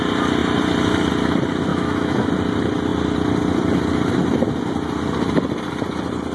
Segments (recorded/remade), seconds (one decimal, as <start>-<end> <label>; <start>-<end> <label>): 0.0-1.7 recorded; 1.7-2.3 remade; 2.3-6.3 recorded